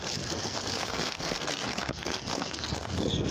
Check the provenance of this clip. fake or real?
fake